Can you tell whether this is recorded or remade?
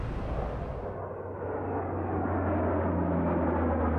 recorded